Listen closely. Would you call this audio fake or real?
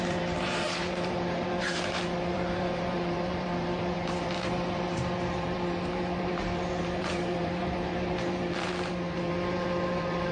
fake